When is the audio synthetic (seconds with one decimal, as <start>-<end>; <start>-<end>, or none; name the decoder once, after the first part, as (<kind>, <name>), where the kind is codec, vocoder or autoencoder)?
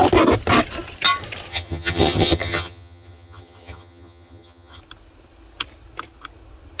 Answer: 1.5-4.8 (vocoder, HiFi-GAN)